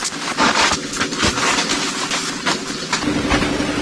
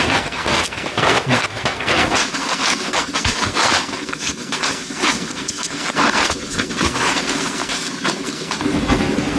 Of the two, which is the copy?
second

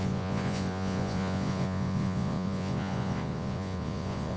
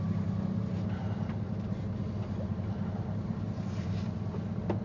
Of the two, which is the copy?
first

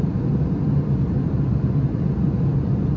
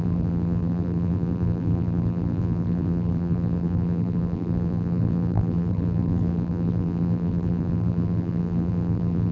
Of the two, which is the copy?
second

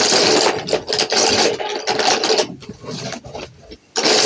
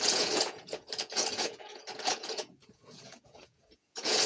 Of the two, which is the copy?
second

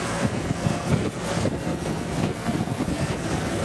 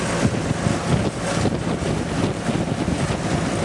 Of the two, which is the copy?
first